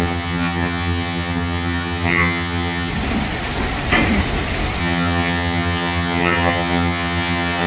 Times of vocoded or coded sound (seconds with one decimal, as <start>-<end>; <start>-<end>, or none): 0.0-2.9; 4.8-7.7